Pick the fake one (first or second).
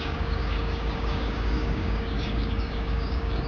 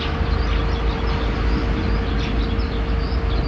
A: first